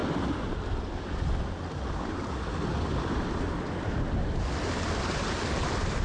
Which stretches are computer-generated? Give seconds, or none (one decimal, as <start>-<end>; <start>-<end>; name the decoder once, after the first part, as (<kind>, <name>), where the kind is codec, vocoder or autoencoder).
2.9-3.5 (vocoder, BigVGAN v2)